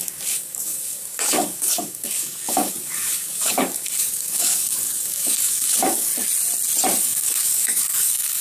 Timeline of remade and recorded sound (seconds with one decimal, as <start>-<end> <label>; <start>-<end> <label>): 0.0-6.1 remade; 6.1-7.0 recorded; 7.0-8.4 remade